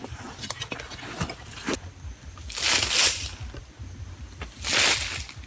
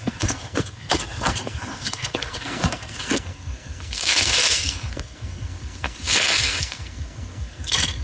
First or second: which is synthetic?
second